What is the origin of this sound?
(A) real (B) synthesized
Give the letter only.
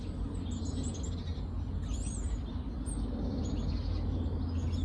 A